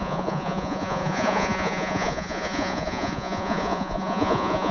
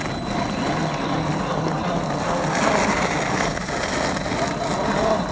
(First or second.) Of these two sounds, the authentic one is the second